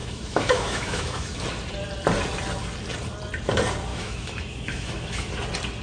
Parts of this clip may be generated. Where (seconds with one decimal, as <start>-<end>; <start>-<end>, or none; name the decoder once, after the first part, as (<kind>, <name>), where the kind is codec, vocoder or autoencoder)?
0.0-1.4 (autoencoder, DAC-VAE); 3.9-5.3